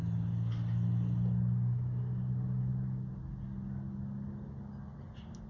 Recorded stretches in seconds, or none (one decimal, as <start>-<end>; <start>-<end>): 0.0-5.5